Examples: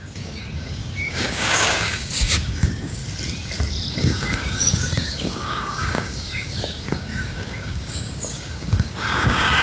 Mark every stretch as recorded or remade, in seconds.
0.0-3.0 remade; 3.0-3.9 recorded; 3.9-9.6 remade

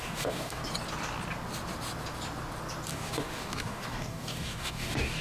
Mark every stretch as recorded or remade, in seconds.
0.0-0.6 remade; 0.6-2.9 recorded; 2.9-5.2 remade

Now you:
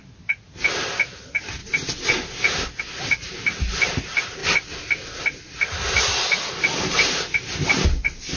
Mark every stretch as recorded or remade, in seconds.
0.0-8.4 recorded

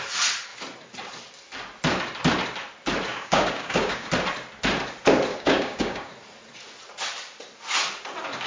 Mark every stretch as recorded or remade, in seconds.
0.0-3.1 recorded; 3.1-4.1 remade; 4.1-5.3 recorded; 5.3-6.1 remade; 6.1-8.5 recorded

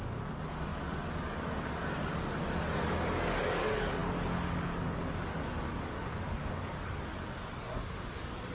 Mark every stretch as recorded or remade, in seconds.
0.0-8.5 remade

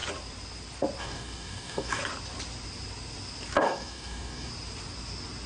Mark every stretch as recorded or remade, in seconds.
0.0-1.0 recorded; 1.0-2.0 remade; 2.0-3.6 recorded; 3.6-4.5 remade; 4.5-5.5 recorded

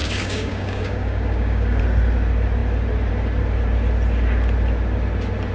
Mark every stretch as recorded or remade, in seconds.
0.0-1.8 remade; 1.8-5.5 recorded

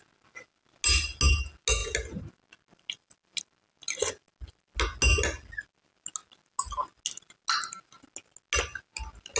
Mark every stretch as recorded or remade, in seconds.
0.0-9.4 recorded